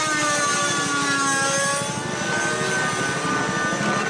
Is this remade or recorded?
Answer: recorded